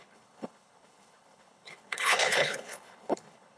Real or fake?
fake